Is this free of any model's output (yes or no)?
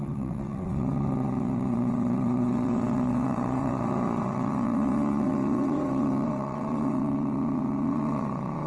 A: no